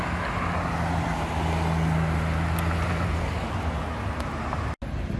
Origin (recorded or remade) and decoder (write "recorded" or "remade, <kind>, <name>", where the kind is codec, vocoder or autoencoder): recorded